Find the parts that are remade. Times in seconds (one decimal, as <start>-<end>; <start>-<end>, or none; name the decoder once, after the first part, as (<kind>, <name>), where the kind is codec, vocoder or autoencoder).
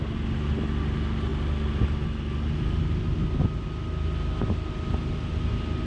none